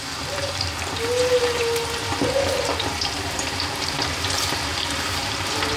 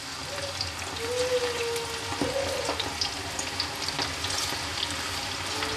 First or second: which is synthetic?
first